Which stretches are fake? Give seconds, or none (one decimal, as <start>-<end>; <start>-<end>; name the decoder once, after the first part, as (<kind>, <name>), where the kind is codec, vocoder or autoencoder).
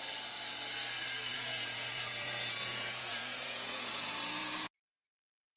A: 1.3-4.7 (vocoder, Vocos)